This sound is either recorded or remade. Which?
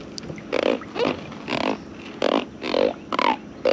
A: recorded